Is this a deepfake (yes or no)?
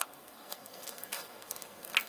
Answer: yes